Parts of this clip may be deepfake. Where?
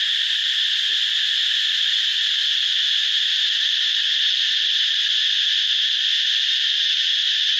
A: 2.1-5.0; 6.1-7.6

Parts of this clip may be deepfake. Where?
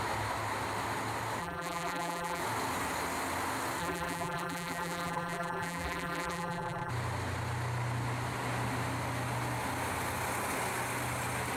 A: 1.4-2.4; 3.8-6.9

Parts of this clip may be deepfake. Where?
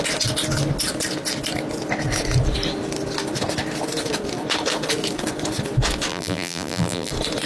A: 6.1-7.1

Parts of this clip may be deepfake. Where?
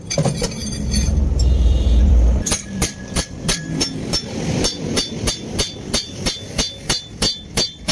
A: 0.0-7.9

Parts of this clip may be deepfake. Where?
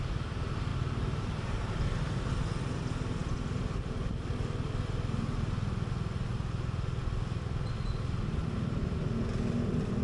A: 0.7-1.7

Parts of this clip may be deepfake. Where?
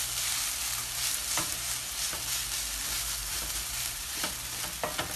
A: 0.8-2.2; 3.2-4.6